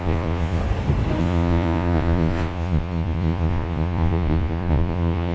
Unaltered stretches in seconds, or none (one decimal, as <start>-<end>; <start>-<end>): 0.6-1.2